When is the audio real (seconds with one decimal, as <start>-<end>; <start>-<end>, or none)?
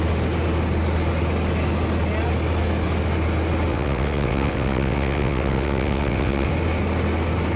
0.0-3.7; 6.5-7.6